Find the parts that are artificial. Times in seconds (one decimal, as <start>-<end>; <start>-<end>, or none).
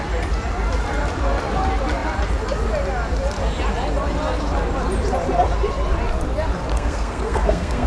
6.7-7.9